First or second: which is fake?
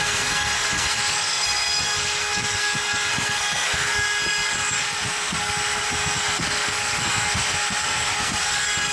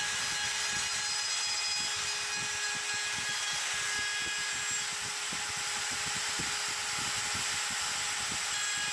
first